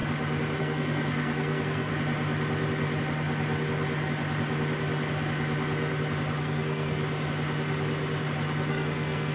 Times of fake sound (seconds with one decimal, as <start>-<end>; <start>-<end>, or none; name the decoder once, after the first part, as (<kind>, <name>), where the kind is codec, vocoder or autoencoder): 0.6-1.9 (codec, SNAC); 6.4-7.0; 8.7-9.3